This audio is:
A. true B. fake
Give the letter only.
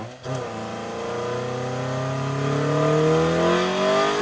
A